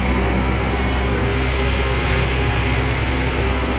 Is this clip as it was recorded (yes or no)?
no